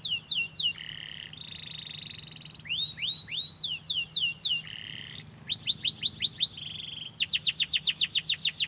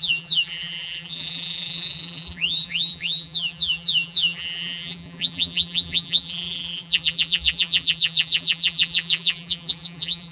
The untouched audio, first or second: first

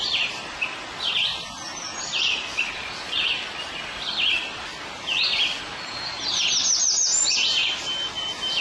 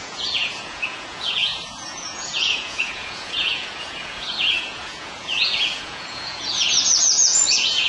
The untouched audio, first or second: first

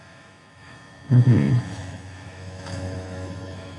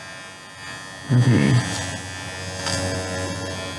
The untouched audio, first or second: second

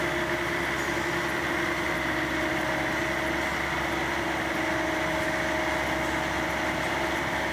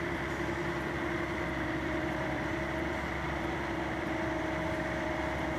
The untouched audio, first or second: first